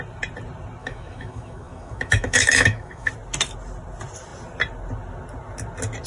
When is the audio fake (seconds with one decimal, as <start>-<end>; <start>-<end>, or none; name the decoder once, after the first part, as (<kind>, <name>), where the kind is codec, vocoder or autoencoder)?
0.8-3.1 (autoencoder, DAC-VAE)

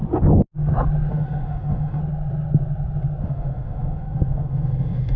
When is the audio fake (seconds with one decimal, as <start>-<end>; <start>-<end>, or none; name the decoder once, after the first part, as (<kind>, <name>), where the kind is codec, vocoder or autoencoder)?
1.1-2.0 (autoencoder, DAC-VAE); 3.2-5.2